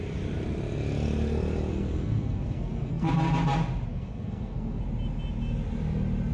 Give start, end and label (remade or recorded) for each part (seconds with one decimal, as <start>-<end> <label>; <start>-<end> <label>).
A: 0.0-1.7 recorded; 1.7-3.1 remade; 3.1-3.9 recorded; 3.9-4.8 remade; 4.8-6.3 recorded